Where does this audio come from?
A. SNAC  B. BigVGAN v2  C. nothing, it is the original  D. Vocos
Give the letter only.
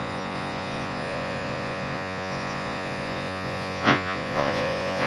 D